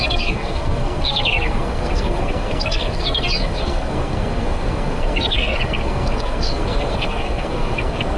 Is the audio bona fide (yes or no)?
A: no